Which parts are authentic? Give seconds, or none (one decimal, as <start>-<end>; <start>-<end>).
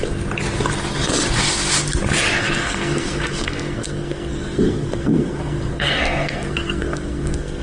0.0-2.4